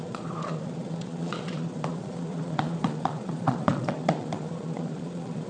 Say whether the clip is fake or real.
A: fake